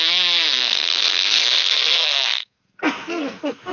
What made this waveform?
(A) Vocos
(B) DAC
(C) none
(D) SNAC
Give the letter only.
D